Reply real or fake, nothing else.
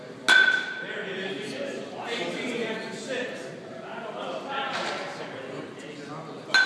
real